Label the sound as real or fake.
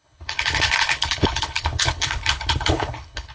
fake